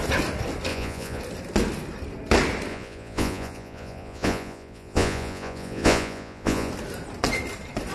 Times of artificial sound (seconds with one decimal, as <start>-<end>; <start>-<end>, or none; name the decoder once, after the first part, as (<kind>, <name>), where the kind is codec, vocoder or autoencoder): 0.7-1.2 (vocoder, Vocos); 2.7-6.7